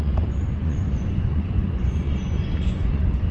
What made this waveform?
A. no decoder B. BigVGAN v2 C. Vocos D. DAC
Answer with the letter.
C